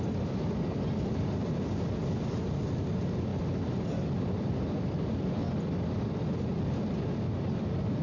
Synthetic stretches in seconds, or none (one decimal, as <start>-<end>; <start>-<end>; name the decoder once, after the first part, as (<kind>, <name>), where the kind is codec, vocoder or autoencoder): 0.0-5.4 (vocoder, BigVGAN v2); 5.9-8.0